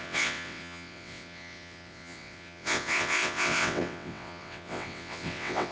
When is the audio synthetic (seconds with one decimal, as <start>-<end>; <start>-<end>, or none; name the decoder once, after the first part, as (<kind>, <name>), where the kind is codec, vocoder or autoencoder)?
0.0-5.7 (vocoder, WaveNeXt)